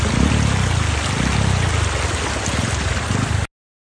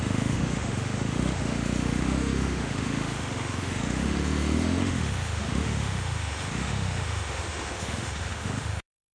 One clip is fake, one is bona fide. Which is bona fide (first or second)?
first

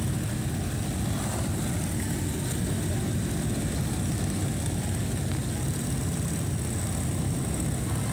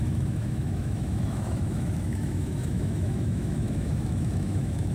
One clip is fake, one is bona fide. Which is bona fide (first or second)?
first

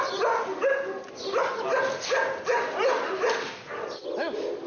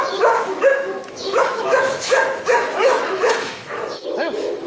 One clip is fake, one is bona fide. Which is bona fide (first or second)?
first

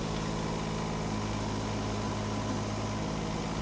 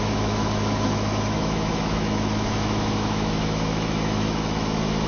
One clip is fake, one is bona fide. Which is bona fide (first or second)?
first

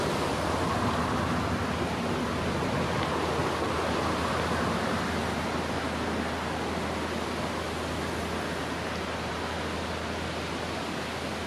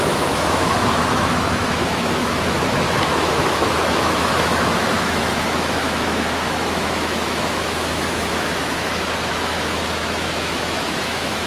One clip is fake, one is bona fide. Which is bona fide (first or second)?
first